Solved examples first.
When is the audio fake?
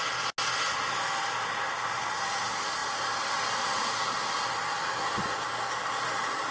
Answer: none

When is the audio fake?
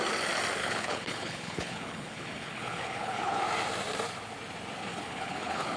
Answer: 0.6-3.4 (codec, HILCodec); 4.9-5.8